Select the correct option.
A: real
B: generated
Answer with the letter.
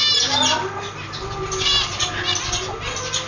A